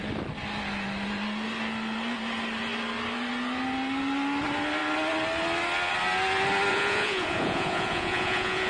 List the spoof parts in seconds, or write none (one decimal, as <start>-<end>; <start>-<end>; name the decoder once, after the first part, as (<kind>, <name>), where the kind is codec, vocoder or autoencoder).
6.7-8.7 (vocoder, Vocos)